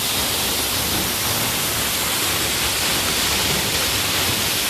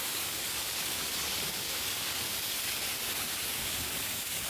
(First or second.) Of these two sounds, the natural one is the first